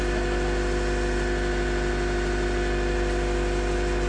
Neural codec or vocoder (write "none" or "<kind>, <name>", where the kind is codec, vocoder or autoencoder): none